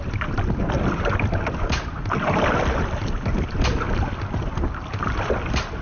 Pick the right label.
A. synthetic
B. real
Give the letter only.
B